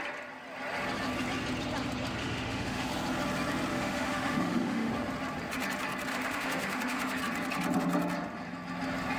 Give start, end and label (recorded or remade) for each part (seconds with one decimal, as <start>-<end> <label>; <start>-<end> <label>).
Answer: 0.0-2.2 recorded; 2.2-2.9 remade; 2.9-3.7 recorded; 3.7-4.9 remade; 4.9-6.1 recorded; 6.1-7.2 remade; 7.2-9.2 recorded